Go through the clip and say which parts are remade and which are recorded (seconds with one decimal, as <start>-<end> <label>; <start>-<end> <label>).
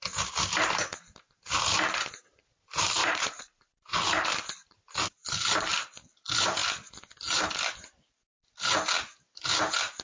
0.0-3.0 recorded; 3.0-3.7 remade; 3.7-10.0 recorded